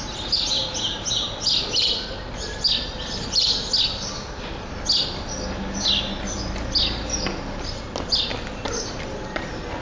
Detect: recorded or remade recorded